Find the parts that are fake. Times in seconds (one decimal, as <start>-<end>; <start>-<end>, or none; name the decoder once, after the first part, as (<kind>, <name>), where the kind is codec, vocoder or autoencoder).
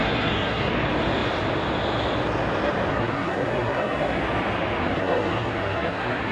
0.0-0.7 (codec, SNAC); 2.9-4.2; 4.8-6.3